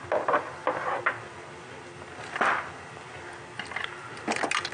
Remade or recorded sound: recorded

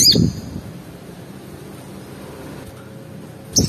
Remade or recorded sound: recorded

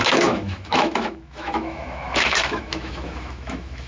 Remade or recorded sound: remade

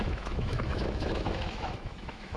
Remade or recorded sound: remade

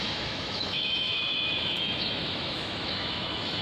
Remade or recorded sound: remade